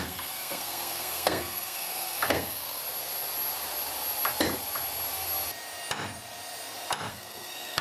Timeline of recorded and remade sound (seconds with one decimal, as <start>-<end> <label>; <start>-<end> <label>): 0.0-2.8 remade; 2.8-7.1 recorded; 7.1-7.8 remade